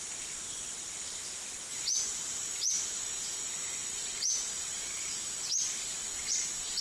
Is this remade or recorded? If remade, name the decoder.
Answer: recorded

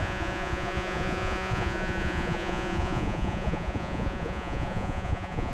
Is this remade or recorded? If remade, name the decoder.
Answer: remade, vocoder, Vocos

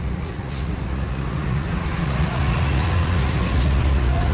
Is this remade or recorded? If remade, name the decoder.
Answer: remade, vocoder, Vocos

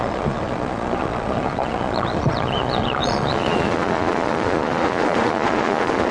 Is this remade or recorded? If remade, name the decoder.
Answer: remade, vocoder, Vocos